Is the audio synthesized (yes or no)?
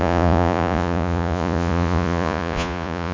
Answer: yes